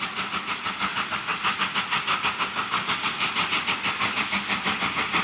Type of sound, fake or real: real